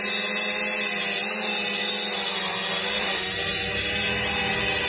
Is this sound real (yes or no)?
yes